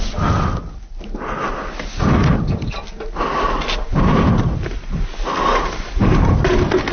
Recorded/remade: recorded